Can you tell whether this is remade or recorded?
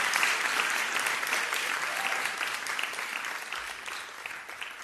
recorded